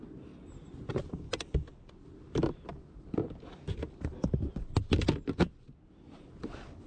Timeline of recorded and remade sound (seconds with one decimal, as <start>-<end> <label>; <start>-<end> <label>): 0.0-6.9 recorded